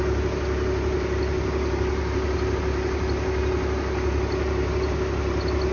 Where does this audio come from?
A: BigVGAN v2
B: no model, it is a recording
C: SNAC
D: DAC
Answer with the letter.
B